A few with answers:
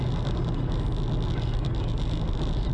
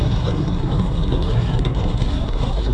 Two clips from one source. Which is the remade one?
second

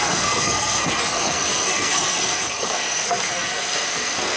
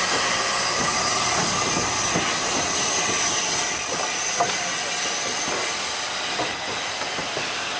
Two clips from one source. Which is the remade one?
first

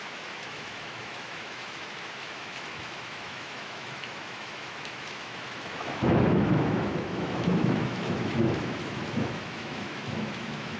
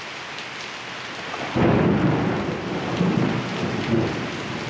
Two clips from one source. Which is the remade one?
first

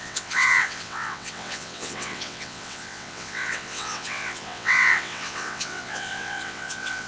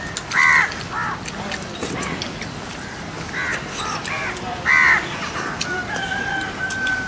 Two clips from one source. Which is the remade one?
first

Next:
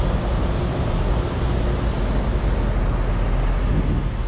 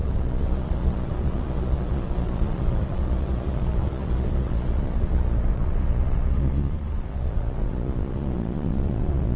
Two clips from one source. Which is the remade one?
second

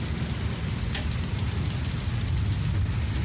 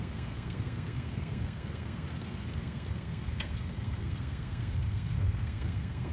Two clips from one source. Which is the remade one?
second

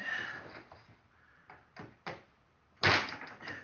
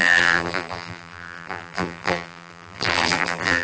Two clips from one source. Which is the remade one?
second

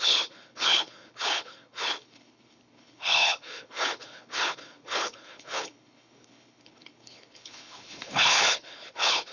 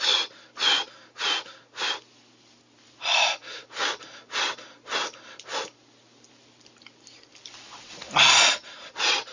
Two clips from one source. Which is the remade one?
first